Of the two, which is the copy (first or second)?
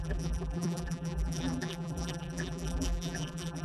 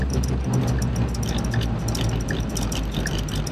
first